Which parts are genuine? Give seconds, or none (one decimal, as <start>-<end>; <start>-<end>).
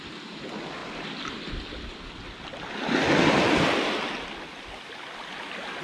0.0-5.8